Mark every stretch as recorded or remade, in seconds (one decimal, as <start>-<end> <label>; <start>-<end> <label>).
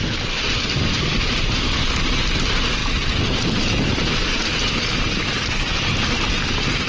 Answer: 0.0-6.9 recorded